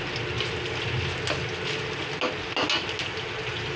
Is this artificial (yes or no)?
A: no